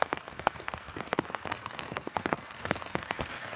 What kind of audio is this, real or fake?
fake